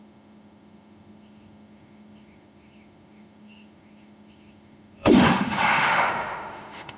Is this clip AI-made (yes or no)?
yes